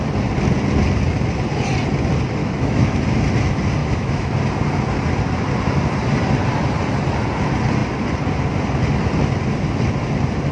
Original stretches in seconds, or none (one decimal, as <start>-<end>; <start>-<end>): 0.0-2.4; 3.0-3.8; 4.3-10.5